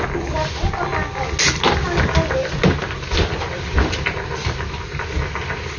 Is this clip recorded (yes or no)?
yes